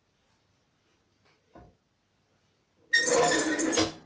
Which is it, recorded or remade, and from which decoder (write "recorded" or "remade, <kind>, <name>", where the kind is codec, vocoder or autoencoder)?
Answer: recorded